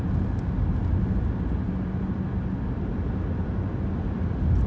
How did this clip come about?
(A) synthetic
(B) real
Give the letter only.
B